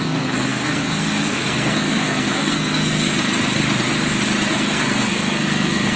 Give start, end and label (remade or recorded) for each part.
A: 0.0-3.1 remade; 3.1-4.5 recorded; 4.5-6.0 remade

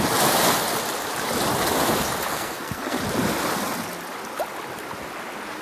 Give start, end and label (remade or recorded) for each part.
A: 0.0-2.3 recorded; 2.3-3.0 remade; 3.0-5.6 recorded

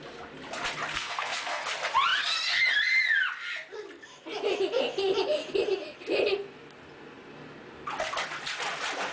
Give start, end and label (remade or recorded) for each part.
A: 0.0-0.9 recorded; 0.9-1.6 remade; 1.6-9.1 recorded

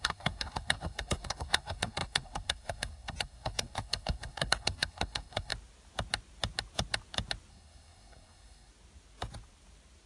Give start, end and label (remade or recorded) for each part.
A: 0.0-5.5 remade; 5.5-7.5 recorded; 7.5-8.7 remade; 8.7-10.1 recorded

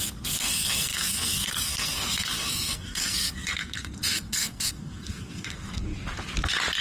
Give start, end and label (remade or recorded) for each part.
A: 0.0-5.9 remade; 5.9-6.8 recorded